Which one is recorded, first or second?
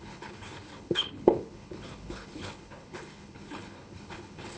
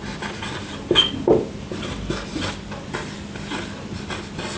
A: second